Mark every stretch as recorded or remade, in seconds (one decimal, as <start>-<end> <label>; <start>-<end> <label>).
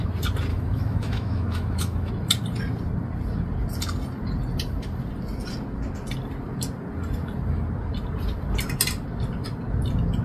0.0-0.5 recorded; 0.5-2.1 remade; 2.1-10.2 recorded